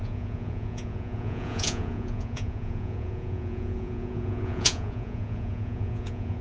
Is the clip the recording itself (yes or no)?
no